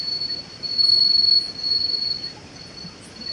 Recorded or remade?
recorded